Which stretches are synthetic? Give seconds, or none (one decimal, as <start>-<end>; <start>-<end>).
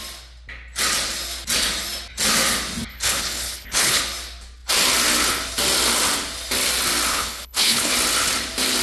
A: 2.9-4.0; 7.1-7.9